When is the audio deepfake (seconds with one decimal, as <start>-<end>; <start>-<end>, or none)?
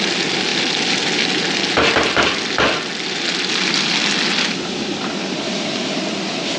none